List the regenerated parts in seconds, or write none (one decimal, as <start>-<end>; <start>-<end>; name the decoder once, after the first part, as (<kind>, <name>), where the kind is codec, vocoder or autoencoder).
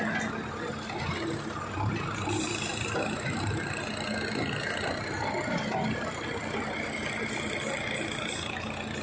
none